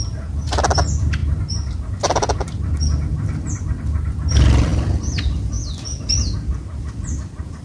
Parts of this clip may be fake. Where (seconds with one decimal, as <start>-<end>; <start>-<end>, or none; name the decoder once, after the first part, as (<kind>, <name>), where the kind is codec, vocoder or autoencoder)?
none